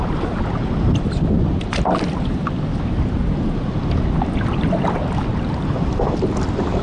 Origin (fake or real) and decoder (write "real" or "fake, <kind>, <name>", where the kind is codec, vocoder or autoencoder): real